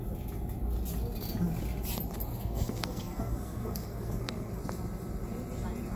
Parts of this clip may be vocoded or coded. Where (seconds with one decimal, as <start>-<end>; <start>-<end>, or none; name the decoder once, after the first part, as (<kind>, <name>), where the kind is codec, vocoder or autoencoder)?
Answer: 2.3-4.6 (codec, SNAC)